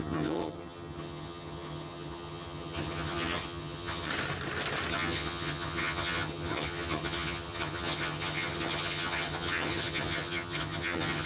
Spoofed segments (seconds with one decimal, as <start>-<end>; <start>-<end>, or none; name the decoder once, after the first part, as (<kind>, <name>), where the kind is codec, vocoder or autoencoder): 0.0-4.1 (vocoder, HiFi-GAN); 4.9-11.3